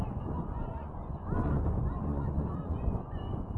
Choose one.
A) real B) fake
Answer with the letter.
B